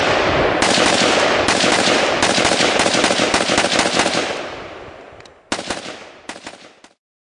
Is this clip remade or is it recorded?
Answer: recorded